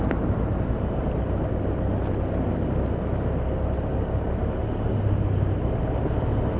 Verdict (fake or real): real